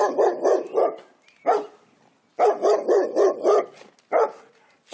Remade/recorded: recorded